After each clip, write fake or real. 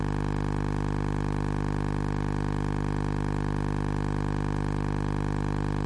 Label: real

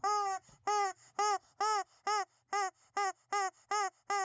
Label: real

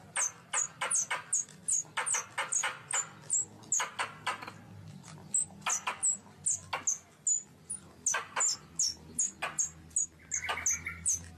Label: real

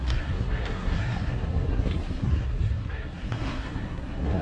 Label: fake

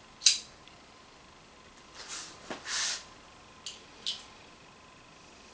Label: real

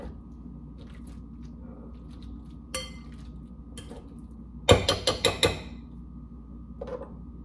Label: real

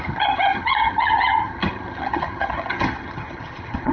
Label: fake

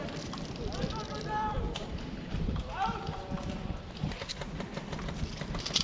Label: fake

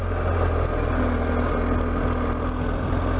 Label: real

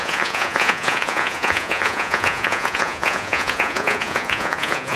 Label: fake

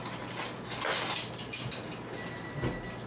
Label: real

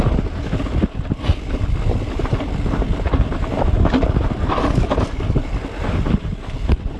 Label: real